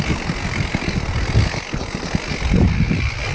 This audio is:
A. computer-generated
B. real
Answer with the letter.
B